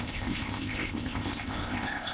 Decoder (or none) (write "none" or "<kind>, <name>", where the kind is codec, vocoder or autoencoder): codec, ZipCodec